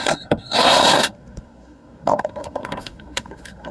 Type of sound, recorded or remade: remade